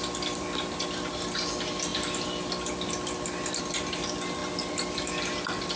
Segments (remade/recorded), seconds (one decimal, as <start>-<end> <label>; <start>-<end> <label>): 0.0-5.8 recorded